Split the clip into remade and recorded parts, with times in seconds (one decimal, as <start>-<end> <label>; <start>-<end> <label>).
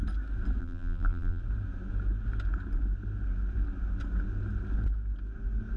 0.0-0.6 recorded; 0.6-1.4 remade; 1.4-5.8 recorded